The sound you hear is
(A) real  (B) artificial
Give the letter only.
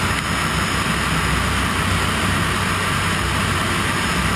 A